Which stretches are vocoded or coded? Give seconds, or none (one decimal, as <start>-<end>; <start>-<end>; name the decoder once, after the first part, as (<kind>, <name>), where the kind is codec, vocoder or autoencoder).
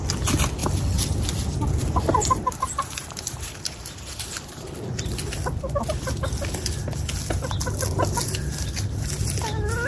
1.8-4.7 (vocoder, BigVGAN v2)